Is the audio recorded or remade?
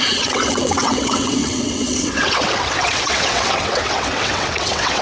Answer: remade